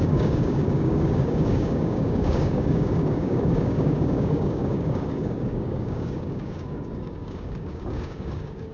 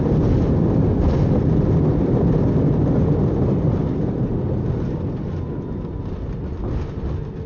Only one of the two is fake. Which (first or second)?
first